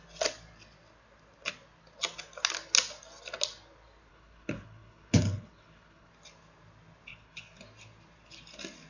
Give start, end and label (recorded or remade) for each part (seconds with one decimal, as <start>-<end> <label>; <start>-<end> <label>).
0.0-4.1 recorded; 4.1-6.1 remade; 6.1-7.1 recorded; 7.1-7.6 remade; 7.6-8.9 recorded